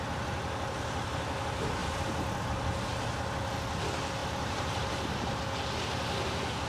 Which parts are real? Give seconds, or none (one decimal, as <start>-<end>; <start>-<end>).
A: 0.0-4.2; 5.3-6.7